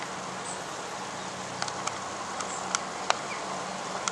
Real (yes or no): yes